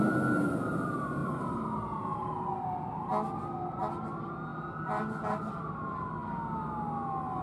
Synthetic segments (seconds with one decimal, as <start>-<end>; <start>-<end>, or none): none